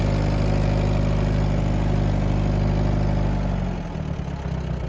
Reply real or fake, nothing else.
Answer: real